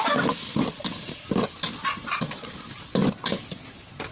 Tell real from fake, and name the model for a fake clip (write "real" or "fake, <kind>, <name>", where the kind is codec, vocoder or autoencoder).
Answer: real